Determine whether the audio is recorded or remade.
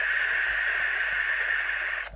recorded